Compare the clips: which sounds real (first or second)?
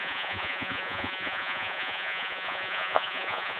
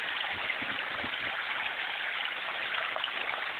second